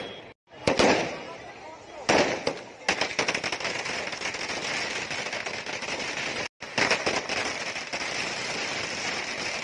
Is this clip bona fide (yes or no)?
yes